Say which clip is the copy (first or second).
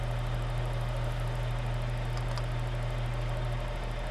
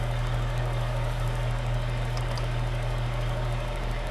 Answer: second